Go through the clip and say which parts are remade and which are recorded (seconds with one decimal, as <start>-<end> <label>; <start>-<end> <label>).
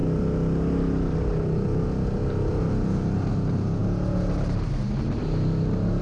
0.0-6.0 recorded